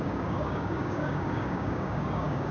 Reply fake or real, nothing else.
fake